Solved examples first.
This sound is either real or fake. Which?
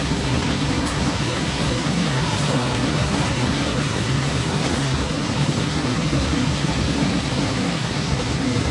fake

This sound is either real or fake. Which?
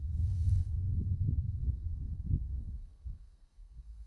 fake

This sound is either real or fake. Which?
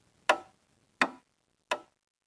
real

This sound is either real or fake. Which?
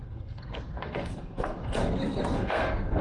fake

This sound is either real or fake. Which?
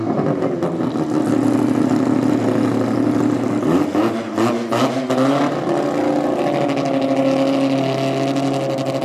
real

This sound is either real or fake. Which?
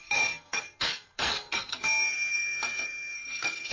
fake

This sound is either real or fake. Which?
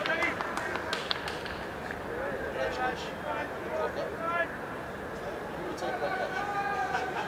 real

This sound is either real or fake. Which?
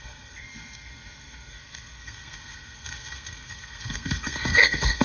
fake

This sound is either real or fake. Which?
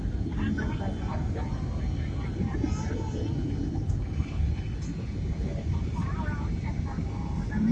real